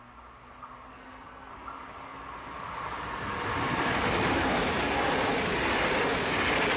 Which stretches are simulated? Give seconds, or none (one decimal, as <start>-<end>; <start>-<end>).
0.9-1.5